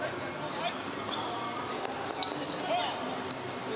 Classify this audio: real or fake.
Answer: real